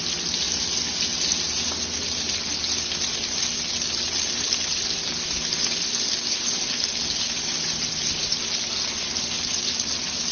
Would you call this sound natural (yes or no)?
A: yes